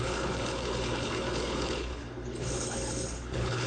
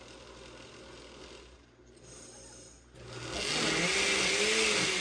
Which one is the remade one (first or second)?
first